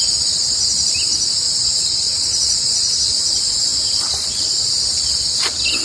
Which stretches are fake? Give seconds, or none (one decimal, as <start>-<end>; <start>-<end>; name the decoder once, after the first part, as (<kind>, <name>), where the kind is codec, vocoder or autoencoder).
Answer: 1.6-2.9 (vocoder, Vocos)